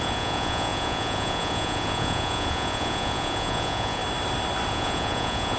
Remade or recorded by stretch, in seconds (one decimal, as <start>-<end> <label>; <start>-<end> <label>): 0.0-4.0 remade; 4.0-4.7 recorded; 4.7-5.6 remade